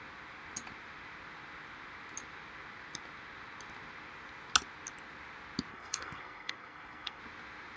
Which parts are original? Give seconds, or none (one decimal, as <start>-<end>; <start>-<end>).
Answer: 0.0-5.7; 7.2-7.8